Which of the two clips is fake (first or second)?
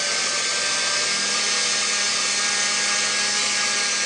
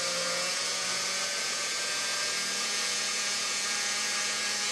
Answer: second